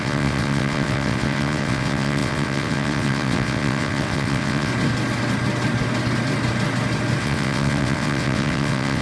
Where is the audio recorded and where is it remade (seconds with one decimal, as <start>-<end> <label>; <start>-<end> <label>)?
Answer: 0.0-4.7 remade; 4.7-7.2 recorded; 7.2-9.0 remade